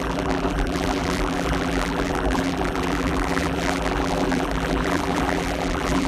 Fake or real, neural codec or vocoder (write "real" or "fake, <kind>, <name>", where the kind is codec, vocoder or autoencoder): fake, vocoder, BigVGAN v2